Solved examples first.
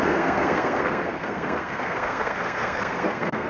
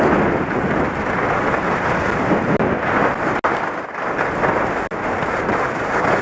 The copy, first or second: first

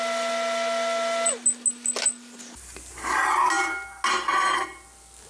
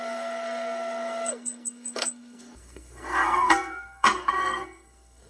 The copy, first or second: second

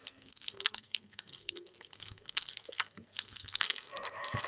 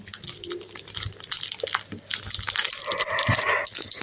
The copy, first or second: first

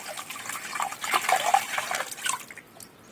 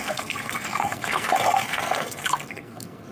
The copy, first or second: second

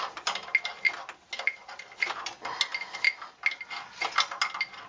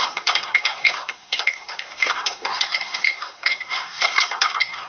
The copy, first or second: second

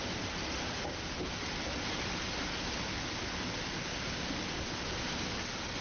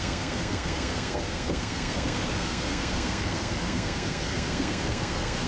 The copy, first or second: second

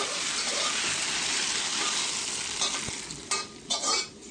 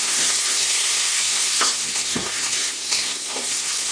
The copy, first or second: second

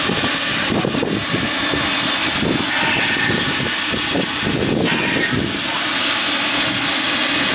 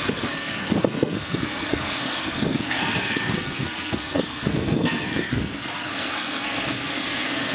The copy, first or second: second